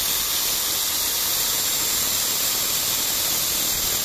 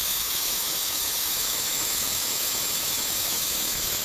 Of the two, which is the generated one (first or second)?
second